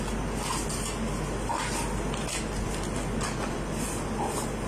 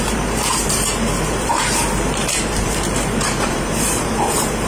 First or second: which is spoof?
second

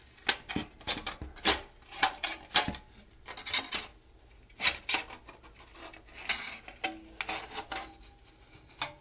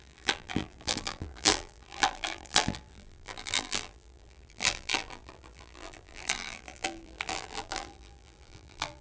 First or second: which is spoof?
second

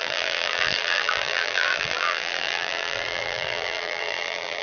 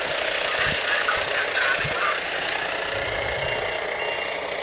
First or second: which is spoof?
first